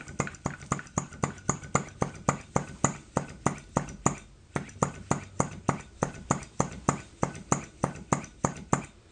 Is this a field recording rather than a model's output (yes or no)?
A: yes